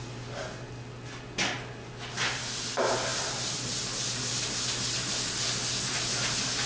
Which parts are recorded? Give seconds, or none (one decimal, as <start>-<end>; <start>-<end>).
0.0-3.1; 3.8-6.7